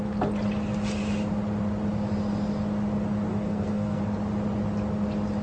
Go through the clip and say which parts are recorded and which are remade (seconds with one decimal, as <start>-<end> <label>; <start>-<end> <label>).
0.0-3.3 recorded; 3.3-4.0 remade; 4.0-5.4 recorded